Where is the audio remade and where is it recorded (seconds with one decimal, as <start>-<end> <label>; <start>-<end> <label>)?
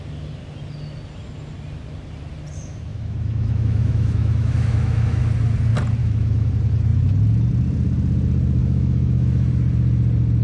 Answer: 0.0-2.9 recorded; 2.9-5.2 remade; 5.2-6.0 recorded; 6.0-6.5 remade; 6.5-8.6 recorded; 8.6-9.5 remade; 9.5-10.4 recorded